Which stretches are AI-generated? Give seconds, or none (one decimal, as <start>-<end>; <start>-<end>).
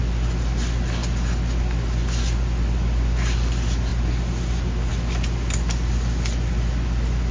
none